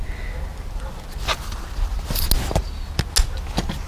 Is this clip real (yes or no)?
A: yes